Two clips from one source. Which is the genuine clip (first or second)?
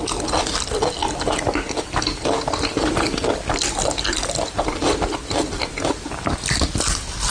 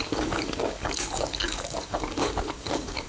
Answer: first